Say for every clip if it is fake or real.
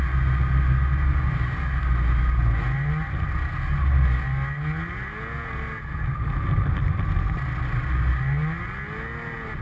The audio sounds real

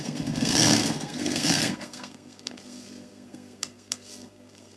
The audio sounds fake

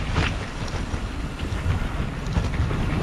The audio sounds real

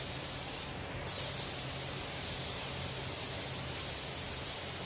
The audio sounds real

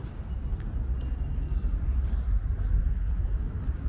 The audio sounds real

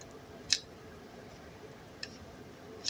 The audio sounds real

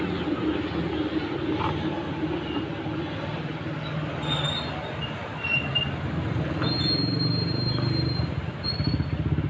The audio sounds real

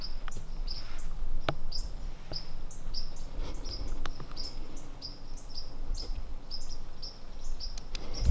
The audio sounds real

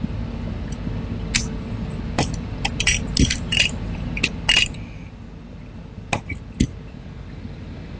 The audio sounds real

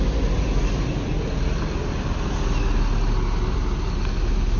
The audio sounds real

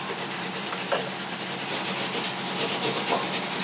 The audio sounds real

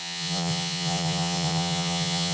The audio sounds fake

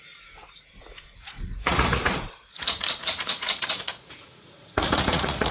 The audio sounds fake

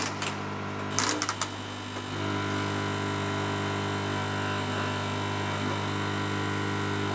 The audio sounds real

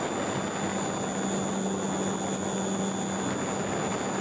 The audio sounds real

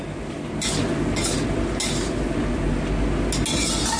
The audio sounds real